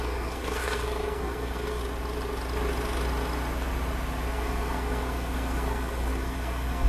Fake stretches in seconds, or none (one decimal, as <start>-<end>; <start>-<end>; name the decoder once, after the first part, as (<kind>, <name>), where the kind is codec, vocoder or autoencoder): 0.0-1.8 (codec, SNAC); 4.3-6.9